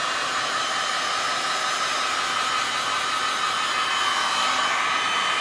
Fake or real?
real